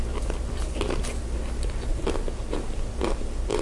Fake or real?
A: fake